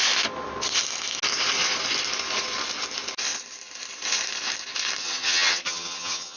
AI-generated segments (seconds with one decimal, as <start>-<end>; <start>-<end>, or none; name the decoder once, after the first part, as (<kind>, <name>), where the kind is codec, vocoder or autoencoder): 5.0-6.4 (vocoder, HiFi-GAN)